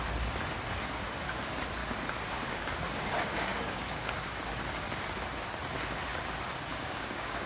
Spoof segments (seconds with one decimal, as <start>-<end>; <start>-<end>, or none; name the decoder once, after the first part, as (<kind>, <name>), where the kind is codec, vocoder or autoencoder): 1.8-4.5 (codec, DAC); 6.7-7.5